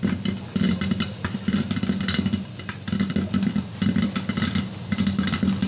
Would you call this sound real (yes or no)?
yes